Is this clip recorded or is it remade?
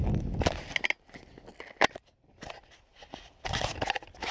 recorded